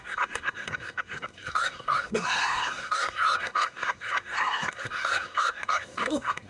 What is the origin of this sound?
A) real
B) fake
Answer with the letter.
B